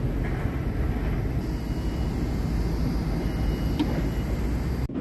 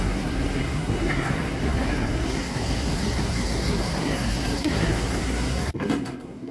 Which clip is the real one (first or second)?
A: first